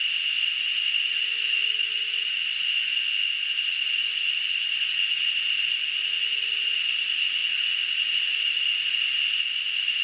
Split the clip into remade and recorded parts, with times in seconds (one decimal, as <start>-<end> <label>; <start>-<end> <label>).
0.0-10.0 recorded